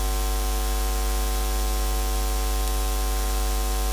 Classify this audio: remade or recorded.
recorded